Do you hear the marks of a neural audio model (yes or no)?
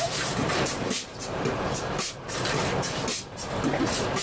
yes